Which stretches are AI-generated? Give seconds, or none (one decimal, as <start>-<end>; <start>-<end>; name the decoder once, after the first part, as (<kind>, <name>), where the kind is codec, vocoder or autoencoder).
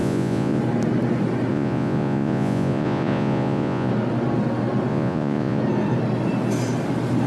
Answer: 0.0-0.6 (vocoder, Vocos); 1.5-3.9; 4.9-5.6